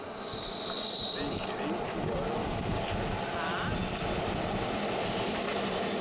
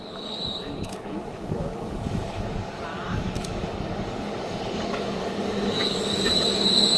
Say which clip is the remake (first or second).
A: second